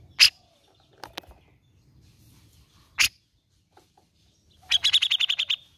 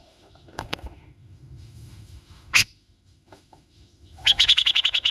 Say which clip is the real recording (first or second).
first